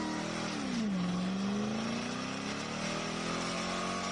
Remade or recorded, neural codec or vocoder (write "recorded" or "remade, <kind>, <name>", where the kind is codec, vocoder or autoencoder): recorded